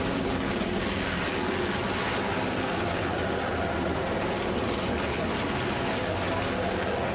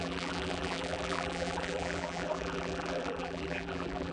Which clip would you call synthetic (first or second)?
second